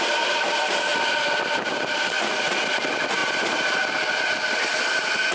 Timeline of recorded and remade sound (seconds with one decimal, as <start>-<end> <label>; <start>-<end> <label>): 0.0-5.3 recorded